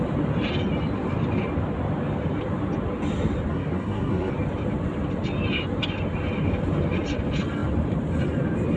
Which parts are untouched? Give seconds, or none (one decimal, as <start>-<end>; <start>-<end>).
0.0-3.5; 4.3-8.8